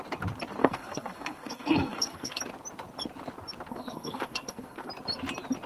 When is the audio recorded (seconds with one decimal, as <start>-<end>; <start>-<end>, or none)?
0.0-0.6; 2.4-3.7; 4.9-5.7